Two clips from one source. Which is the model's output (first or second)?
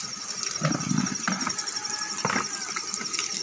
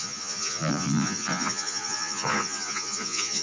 second